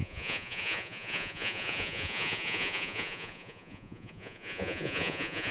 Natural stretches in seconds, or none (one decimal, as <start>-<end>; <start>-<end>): none